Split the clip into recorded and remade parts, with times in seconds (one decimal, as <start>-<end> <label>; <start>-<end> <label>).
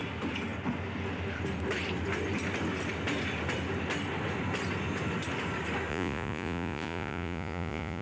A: 0.0-5.9 recorded; 5.9-8.0 remade